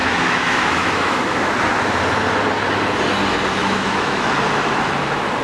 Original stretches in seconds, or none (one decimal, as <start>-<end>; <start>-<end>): 1.5-3.6; 4.3-5.4